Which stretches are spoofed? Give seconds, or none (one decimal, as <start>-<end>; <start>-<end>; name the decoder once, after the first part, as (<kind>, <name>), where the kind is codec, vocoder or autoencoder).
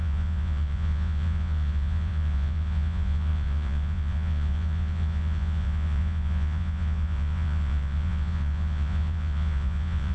0.0-10.1 (vocoder, Vocos)